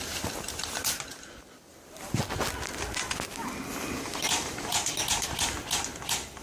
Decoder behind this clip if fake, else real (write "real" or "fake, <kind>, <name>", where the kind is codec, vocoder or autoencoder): real